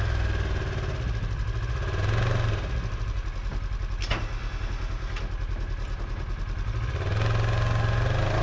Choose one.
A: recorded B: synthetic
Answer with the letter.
A